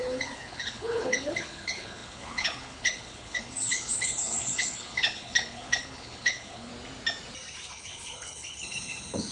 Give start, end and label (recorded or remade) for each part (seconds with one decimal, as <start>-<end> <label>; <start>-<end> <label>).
0.0-6.7 remade; 6.7-7.7 recorded; 7.7-9.3 remade